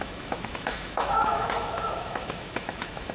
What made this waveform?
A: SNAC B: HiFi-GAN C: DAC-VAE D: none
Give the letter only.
C